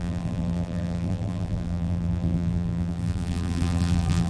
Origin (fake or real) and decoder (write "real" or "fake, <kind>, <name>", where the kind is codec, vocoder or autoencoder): fake, vocoder, BigVGAN v2